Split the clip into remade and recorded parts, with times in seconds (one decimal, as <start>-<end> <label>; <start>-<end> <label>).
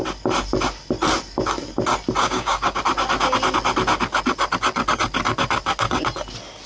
0.0-2.2 recorded; 2.2-2.8 remade; 2.8-6.7 recorded